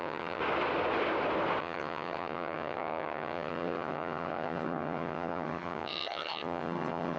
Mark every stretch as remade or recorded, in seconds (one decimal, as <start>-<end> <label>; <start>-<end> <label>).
0.0-0.4 remade; 0.4-1.6 recorded; 1.6-7.2 remade